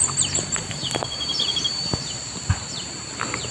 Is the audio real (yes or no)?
no